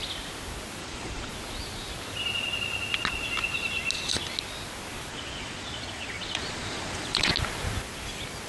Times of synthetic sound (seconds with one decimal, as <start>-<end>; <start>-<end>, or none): 0.8-1.3; 5.1-7.3